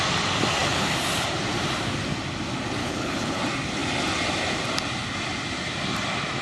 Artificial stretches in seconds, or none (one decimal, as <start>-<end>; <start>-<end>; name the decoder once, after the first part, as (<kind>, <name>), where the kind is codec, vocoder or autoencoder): 2.8-3.4 (codec, HILCodec)